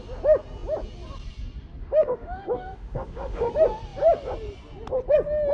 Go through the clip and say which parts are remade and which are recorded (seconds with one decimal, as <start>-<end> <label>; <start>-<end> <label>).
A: 0.0-1.8 recorded; 1.8-3.5 remade; 3.5-5.5 recorded